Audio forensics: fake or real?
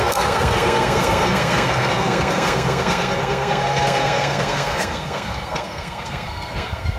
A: fake